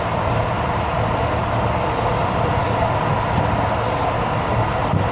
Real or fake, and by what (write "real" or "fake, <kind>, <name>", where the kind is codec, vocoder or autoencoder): real